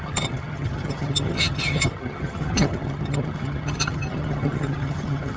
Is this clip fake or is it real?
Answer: fake